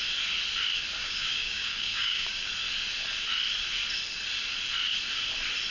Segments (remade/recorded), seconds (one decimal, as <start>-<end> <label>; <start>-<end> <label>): 0.0-1.0 recorded; 1.0-2.5 remade; 2.5-5.7 recorded